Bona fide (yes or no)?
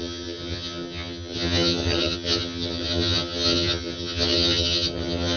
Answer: no